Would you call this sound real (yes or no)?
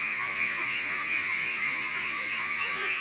no